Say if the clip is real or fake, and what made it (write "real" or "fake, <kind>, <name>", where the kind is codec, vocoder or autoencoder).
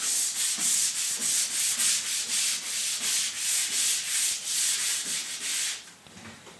real